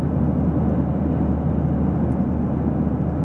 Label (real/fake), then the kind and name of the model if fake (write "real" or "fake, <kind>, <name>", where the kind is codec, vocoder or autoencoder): real